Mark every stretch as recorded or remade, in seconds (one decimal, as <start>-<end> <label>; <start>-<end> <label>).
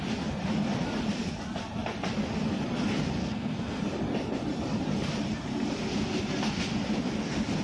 0.0-3.2 recorded; 3.2-3.8 remade; 3.8-7.6 recorded